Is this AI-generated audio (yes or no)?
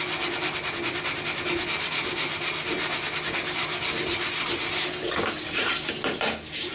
no